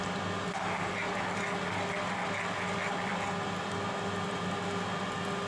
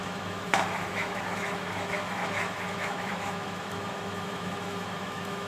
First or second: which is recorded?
first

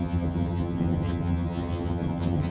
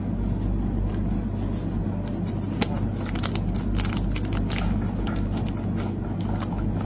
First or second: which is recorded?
second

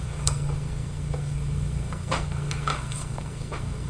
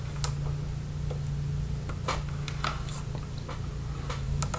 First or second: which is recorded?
second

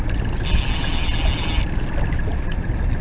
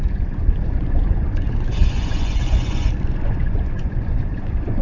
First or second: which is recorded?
first